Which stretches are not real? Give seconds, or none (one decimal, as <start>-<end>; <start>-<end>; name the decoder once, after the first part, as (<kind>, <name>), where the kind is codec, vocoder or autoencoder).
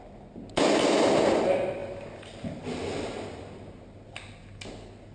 none